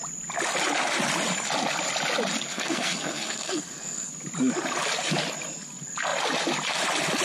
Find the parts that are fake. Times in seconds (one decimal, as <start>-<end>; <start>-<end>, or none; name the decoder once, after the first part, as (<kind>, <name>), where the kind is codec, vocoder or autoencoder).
2.5-4.1 (codec, SNAC)